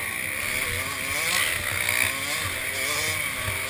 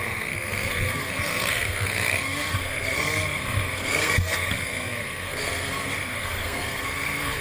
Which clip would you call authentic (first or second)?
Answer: first